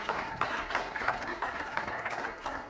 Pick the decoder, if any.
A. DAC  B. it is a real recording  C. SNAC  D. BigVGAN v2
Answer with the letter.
C